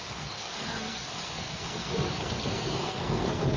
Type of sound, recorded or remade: remade